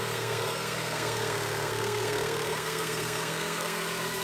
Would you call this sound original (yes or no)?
no